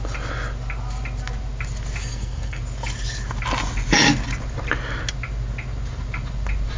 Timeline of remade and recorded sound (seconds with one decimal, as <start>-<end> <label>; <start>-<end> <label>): 0.0-2.0 recorded; 2.0-2.6 remade; 2.6-6.8 recorded